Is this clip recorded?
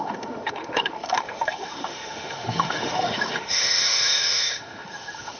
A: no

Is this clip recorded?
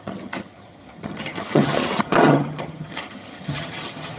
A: no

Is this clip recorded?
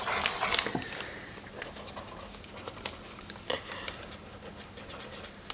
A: yes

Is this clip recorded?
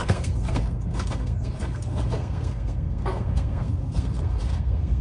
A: no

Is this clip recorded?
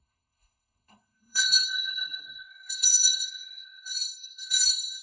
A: no